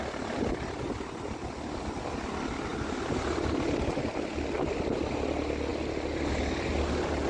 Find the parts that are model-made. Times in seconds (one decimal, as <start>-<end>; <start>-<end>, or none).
none